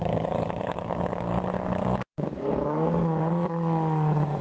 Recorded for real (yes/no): no